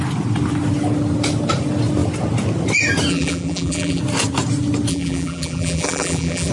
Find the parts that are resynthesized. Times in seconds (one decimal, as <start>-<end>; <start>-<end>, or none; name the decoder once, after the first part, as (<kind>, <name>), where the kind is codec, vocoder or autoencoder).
3.1-4.0 (vocoder, BigVGAN v2); 4.9-6.5